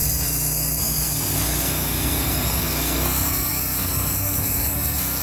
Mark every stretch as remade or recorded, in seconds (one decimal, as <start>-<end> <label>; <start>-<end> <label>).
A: 0.0-5.2 remade